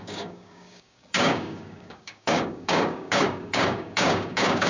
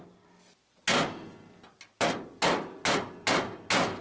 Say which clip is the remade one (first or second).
first